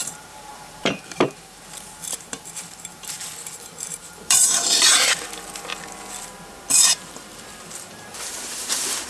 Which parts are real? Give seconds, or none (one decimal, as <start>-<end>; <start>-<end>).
5.7-6.2